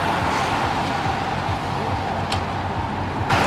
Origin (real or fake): real